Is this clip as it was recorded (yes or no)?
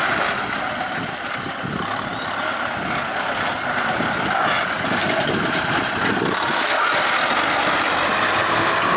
yes